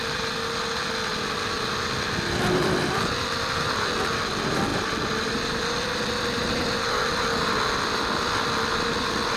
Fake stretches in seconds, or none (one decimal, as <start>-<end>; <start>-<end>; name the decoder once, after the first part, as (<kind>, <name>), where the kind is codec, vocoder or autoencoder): 4.7-6.8 (vocoder, BigVGAN v2)